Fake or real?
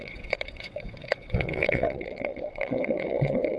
fake